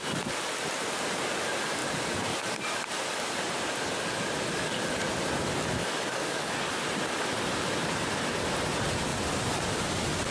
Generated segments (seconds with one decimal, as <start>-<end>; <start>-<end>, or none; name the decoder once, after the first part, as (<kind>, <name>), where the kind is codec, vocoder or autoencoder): 5.8-6.7 (codec, DAC)